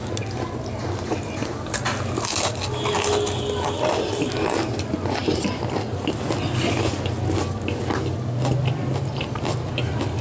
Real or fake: real